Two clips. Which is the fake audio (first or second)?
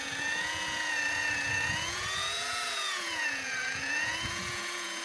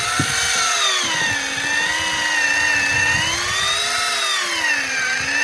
first